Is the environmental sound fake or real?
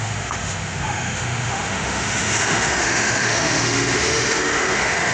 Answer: fake